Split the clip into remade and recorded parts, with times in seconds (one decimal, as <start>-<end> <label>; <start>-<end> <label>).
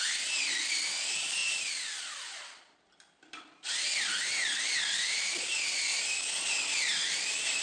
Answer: 0.0-7.6 recorded